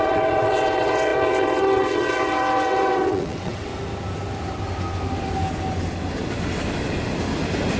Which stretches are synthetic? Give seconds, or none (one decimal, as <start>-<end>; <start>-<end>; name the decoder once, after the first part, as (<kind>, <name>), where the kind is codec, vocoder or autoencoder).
0.0-3.7 (vocoder, WaveNeXt)